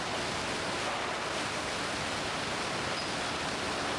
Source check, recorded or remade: recorded